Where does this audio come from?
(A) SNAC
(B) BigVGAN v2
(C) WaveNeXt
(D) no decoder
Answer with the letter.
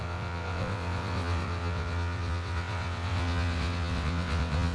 C